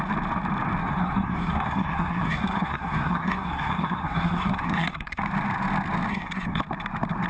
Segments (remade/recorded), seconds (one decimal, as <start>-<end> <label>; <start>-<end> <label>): 0.0-0.8 recorded; 0.8-5.2 remade; 5.2-6.1 recorded; 6.1-6.6 remade; 6.6-7.3 recorded